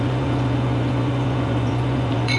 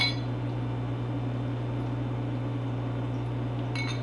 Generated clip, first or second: first